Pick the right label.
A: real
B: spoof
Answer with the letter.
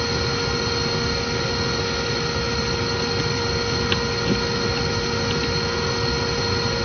A